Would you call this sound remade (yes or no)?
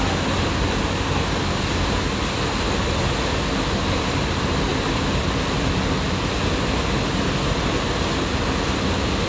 no